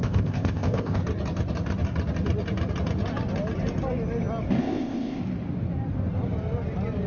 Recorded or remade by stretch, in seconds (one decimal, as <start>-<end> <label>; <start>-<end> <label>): 0.0-1.0 remade; 1.0-4.6 recorded; 4.6-5.2 remade; 5.2-7.1 recorded